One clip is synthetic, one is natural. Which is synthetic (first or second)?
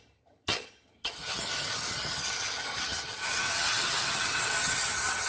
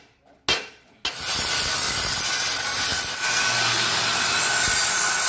first